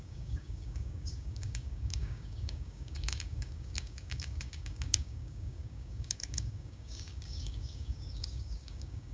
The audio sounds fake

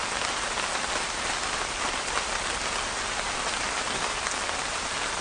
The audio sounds real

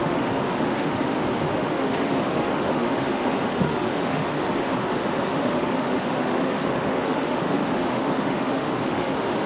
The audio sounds fake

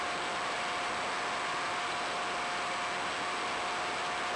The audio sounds real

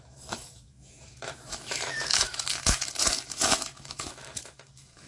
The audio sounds fake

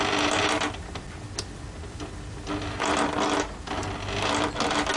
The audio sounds real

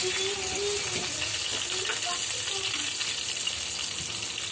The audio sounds real